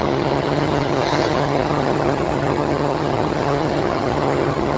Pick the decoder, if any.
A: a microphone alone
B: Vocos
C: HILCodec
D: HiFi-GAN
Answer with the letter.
D